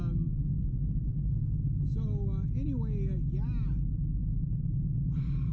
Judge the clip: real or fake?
real